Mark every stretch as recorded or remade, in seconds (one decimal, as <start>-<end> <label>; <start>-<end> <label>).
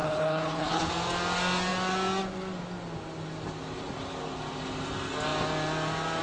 0.0-0.9 remade; 0.9-6.2 recorded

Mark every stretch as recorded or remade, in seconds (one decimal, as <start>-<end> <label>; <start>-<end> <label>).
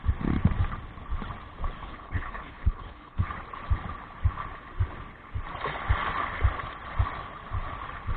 0.0-1.8 recorded; 1.8-3.3 remade; 3.3-8.2 recorded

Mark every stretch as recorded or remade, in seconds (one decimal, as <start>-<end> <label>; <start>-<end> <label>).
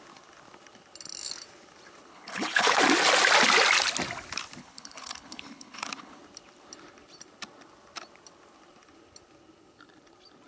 0.0-2.1 recorded; 2.1-2.8 remade; 2.8-4.6 recorded; 4.6-6.2 remade; 6.2-10.5 recorded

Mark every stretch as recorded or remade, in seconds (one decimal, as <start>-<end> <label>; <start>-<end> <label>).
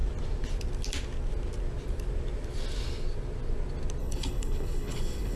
0.0-4.0 recorded; 4.0-5.4 remade